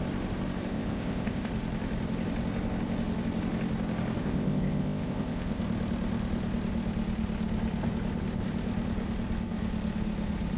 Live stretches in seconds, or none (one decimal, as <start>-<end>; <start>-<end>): 0.0-0.7; 1.5-4.2; 5.6-10.6